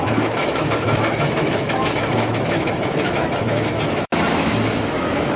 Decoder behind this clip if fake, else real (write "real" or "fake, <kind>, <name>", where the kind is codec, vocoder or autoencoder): fake, autoencoder, DAC-VAE